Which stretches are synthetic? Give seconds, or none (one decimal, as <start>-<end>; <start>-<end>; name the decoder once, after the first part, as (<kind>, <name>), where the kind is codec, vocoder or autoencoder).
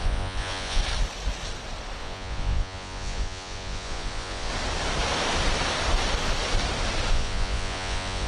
0.0-0.8 (vocoder, Vocos); 2.0-4.5; 7.1-8.3